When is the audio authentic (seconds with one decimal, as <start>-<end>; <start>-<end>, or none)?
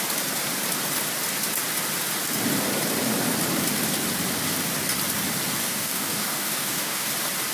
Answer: 0.0-5.6; 7.1-7.5